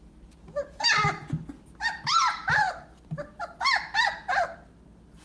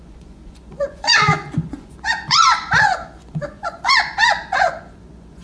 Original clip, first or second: first